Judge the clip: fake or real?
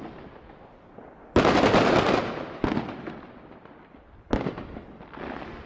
real